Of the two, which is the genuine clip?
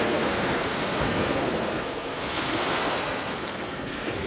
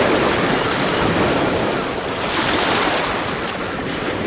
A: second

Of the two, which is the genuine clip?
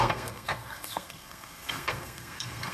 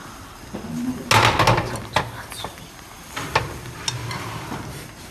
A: second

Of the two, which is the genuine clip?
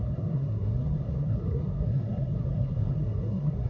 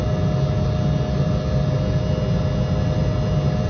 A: second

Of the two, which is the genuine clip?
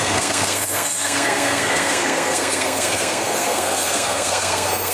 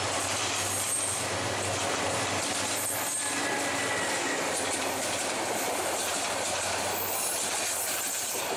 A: second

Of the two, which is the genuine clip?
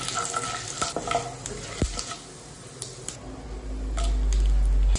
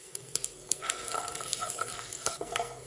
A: first